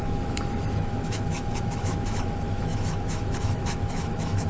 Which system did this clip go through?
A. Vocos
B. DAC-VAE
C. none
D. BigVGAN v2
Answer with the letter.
B